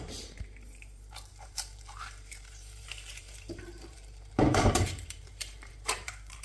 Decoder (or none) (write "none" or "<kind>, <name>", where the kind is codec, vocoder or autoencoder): vocoder, BigVGAN v2